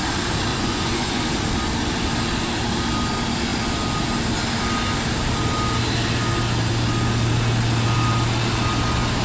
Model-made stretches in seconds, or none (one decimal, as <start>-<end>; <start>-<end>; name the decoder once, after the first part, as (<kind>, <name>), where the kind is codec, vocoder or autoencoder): 0.5-1.2 (vocoder, Vocos)